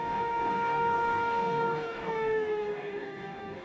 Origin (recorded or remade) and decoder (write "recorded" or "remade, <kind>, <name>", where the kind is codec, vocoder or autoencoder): remade, codec, DAC